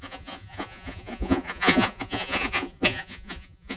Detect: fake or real fake